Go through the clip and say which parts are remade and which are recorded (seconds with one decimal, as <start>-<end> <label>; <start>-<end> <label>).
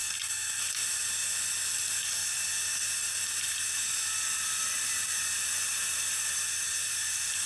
0.0-1.2 remade; 1.2-1.7 recorded; 1.7-2.2 remade; 2.2-6.7 recorded; 6.7-7.5 remade